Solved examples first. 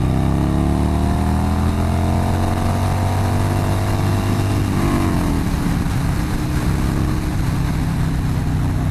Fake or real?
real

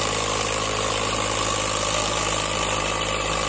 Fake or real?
real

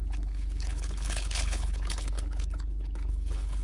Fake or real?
fake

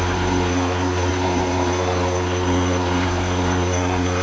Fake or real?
fake